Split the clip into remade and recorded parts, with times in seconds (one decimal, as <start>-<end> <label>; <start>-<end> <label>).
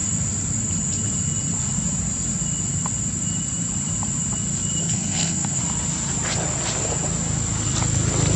0.0-4.8 recorded; 4.8-5.6 remade; 5.6-8.4 recorded